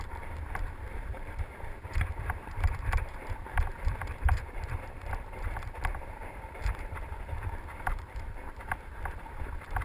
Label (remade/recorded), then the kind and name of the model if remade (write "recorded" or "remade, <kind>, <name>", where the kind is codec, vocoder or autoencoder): remade, vocoder, BigVGAN v2